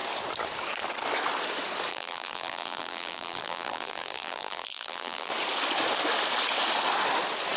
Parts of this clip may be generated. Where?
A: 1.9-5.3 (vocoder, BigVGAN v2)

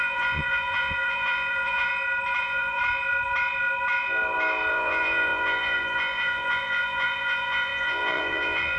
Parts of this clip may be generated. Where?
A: 0.0-1.9 (vocoder, Vocos); 2.4-2.8; 4.7-8.8

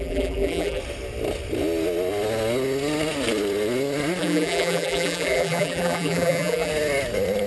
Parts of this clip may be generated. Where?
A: 0.0-0.8 (vocoder, BigVGAN v2); 4.2-6.7

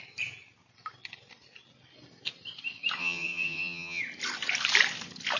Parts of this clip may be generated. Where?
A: 3.0-4.0 (vocoder, HiFi-GAN)

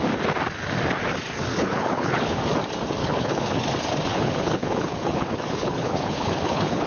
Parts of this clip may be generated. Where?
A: 1.5-2.4 (codec, HILCodec); 3.0-3.6; 4.1-6.9

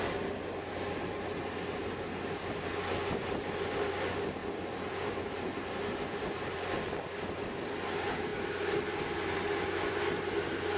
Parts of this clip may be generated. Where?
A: none

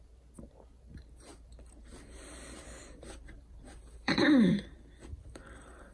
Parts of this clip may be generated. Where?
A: 0.0-5.9 (vocoder, BigVGAN v2)